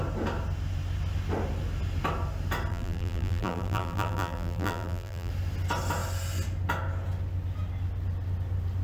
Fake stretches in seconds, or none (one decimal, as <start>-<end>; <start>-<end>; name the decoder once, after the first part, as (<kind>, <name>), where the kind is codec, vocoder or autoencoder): 2.7-5.3 (vocoder, BigVGAN v2)